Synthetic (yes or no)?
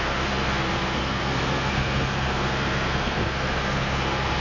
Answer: yes